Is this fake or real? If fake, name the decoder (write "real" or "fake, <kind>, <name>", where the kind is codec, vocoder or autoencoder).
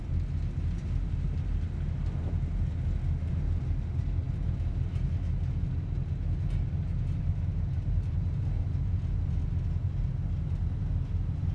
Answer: real